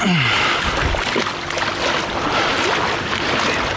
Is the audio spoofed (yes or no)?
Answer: no